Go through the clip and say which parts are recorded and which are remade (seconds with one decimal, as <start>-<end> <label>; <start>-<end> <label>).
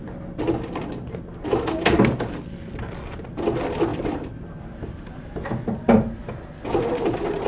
0.0-3.9 recorded; 3.9-6.3 remade; 6.3-7.5 recorded